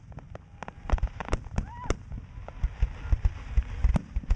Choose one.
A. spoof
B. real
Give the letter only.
B